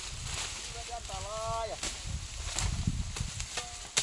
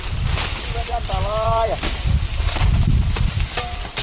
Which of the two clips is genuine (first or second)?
first